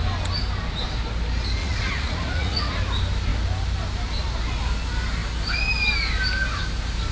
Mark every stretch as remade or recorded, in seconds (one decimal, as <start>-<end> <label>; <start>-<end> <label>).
0.0-1.6 recorded; 1.6-2.8 remade; 2.8-7.1 recorded